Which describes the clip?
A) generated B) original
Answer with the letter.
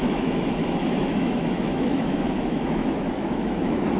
A